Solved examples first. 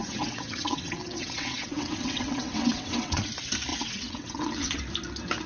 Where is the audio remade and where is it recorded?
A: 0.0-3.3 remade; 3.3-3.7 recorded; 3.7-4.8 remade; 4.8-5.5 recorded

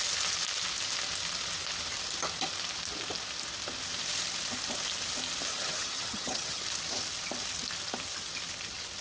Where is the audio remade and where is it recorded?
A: 0.0-5.5 recorded; 5.5-6.6 remade; 6.6-9.0 recorded

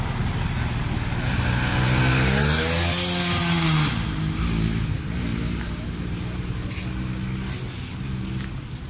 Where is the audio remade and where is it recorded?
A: 0.0-5.3 recorded; 5.3-6.7 remade; 6.7-8.9 recorded

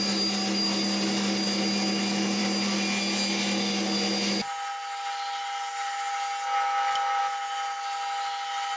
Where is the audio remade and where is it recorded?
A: 0.0-8.8 recorded